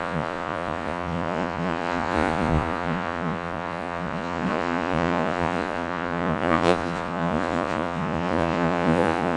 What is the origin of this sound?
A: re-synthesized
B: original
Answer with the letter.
A